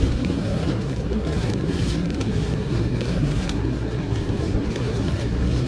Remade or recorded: remade